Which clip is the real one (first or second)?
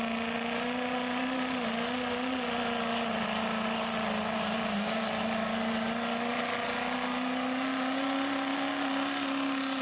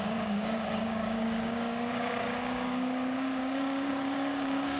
first